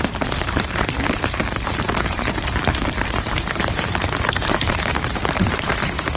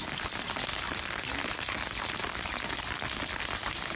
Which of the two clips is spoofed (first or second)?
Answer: first